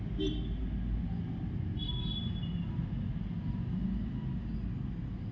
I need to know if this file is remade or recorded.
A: recorded